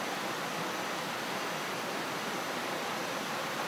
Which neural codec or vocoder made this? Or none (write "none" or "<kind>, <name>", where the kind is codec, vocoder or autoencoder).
none